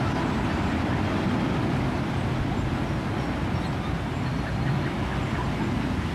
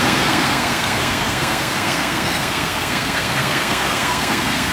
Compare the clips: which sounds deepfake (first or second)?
second